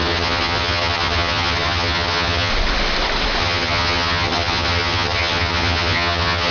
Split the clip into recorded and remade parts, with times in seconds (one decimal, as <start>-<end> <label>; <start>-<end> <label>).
0.0-2.5 remade; 2.5-3.4 recorded; 3.4-6.5 remade